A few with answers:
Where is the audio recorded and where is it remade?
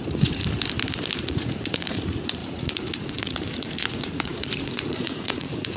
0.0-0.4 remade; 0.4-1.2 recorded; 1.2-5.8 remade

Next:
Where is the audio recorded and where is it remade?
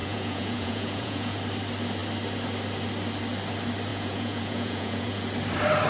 0.0-1.4 remade; 1.4-3.9 recorded; 3.9-5.2 remade; 5.2-5.9 recorded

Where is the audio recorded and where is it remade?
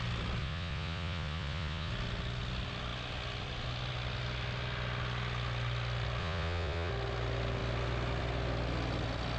0.0-0.4 recorded; 0.4-1.9 remade; 1.9-6.2 recorded; 6.2-6.9 remade; 6.9-9.4 recorded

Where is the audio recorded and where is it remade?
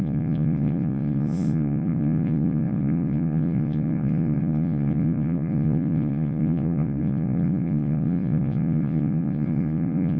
0.0-10.2 remade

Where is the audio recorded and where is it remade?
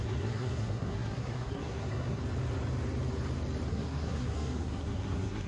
0.0-2.2 remade; 2.2-3.7 recorded; 3.7-5.5 remade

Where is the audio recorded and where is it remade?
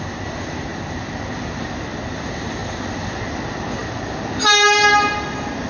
0.0-5.7 recorded